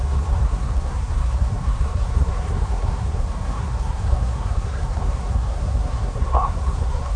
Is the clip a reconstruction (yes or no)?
yes